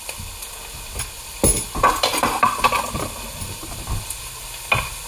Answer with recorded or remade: recorded